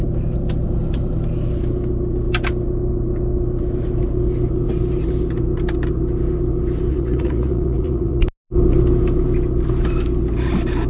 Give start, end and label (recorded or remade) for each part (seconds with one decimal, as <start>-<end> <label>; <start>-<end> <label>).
0.0-6.9 recorded; 6.9-8.2 remade; 8.2-10.9 recorded

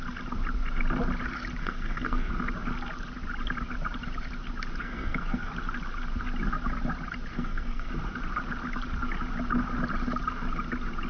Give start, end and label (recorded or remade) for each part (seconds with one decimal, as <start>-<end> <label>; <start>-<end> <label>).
0.0-1.6 recorded; 1.6-2.3 remade; 2.3-4.8 recorded; 4.8-5.5 remade; 5.5-7.3 recorded; 7.3-7.9 remade; 7.9-11.1 recorded

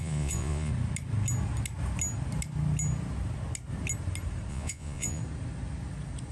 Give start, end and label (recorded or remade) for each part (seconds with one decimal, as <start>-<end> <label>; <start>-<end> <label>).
0.0-0.7 remade; 0.7-4.5 recorded; 4.5-5.2 remade; 5.2-6.3 recorded

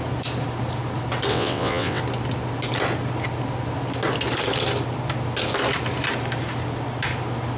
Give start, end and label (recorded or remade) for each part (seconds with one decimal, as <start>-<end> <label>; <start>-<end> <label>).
0.0-1.3 recorded; 1.3-2.0 remade; 2.0-7.6 recorded

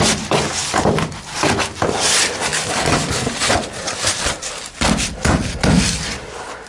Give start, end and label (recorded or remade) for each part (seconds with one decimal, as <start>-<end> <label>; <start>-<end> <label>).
0.0-6.7 remade